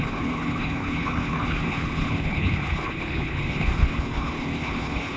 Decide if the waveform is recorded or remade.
remade